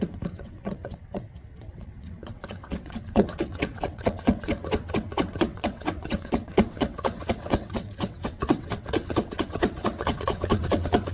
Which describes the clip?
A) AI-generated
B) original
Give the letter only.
A